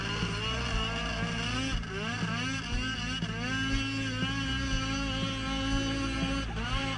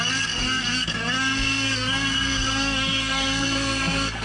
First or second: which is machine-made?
second